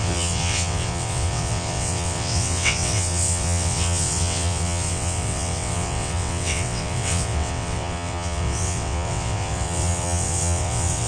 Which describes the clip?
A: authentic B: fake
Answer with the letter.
B